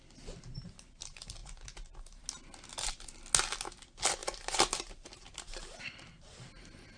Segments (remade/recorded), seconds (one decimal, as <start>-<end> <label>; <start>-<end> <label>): 0.0-4.2 recorded; 4.2-5.8 remade; 5.8-7.0 recorded